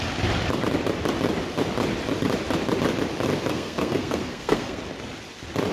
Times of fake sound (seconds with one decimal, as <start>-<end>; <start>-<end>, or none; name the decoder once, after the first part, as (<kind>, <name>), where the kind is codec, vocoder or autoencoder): 3.5-4.8 (codec, SNAC)